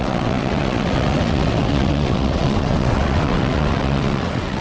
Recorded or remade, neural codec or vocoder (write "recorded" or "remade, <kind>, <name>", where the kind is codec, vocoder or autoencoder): remade, vocoder, WaveNeXt